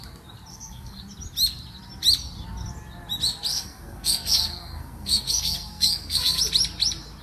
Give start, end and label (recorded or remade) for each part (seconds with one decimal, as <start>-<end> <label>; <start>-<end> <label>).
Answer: 0.0-0.5 recorded; 0.5-1.0 remade; 1.0-3.5 recorded; 3.5-6.4 remade; 6.4-7.2 recorded